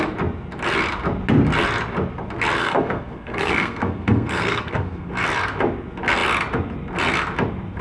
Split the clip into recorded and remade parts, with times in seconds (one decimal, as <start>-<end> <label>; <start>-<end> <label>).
0.0-2.6 recorded; 2.6-5.1 remade; 5.1-7.8 recorded